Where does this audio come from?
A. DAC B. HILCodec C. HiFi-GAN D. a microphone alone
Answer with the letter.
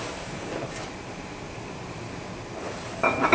D